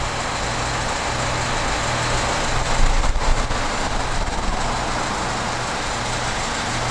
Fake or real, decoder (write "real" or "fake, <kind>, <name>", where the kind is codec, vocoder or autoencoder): real